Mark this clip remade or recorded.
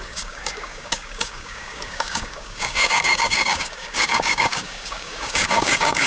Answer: remade